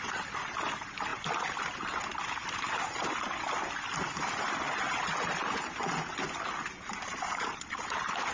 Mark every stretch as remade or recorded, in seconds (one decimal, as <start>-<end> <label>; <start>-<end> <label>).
0.0-8.3 recorded